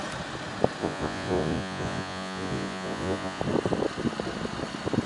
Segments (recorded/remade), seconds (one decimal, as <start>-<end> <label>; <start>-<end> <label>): 0.0-0.8 recorded; 0.8-3.4 remade; 3.4-5.1 recorded